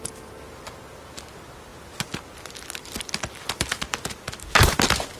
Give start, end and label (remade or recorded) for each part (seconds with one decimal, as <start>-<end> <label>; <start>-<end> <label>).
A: 0.0-5.2 recorded